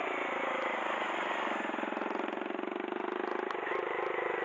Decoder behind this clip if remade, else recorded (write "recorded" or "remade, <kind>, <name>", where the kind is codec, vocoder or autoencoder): recorded